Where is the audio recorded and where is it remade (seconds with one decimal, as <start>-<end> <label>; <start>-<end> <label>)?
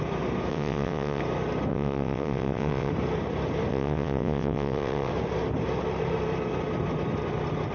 0.0-0.5 recorded; 0.5-1.2 remade; 1.2-1.7 recorded; 1.7-2.9 remade; 2.9-3.7 recorded; 3.7-5.1 remade; 5.1-7.7 recorded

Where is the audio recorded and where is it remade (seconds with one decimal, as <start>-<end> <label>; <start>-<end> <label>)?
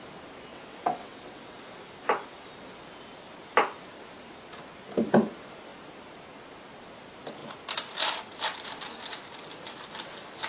0.0-0.5 recorded; 0.5-1.4 remade; 1.4-10.5 recorded